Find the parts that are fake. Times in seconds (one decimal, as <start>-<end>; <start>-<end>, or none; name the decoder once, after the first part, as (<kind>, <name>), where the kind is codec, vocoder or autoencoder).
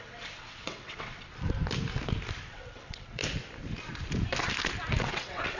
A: 0.0-1.3 (vocoder, WaveNeXt); 2.5-3.2; 5.0-5.6